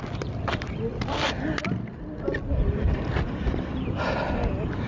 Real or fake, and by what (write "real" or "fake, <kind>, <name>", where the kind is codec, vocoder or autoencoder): real